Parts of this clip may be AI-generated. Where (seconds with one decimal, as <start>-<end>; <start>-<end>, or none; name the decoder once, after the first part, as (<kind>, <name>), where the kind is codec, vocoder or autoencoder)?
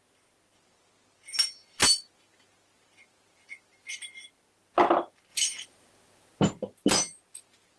none